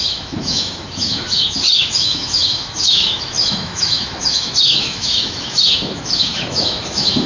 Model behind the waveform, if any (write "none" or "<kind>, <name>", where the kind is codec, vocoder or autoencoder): autoencoder, DAC-VAE